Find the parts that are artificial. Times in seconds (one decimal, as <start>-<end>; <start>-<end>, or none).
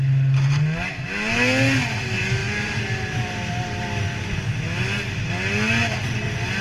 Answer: none